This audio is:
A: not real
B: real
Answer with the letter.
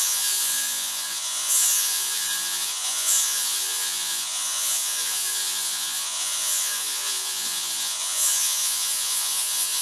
A